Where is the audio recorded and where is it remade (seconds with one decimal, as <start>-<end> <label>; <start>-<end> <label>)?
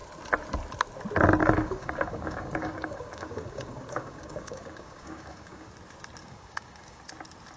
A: 0.0-1.4 recorded; 1.4-5.7 remade; 5.7-6.2 recorded; 6.2-7.0 remade; 7.0-7.6 recorded